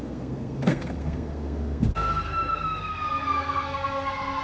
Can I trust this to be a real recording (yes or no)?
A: no